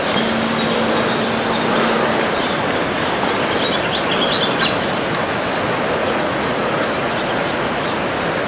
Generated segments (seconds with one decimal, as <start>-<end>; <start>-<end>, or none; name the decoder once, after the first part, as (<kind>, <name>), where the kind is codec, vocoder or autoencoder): 6.0-8.0 (vocoder, Vocos)